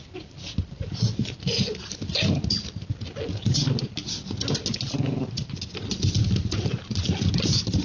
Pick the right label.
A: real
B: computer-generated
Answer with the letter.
A